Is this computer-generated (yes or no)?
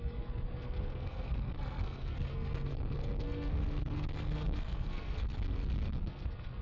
yes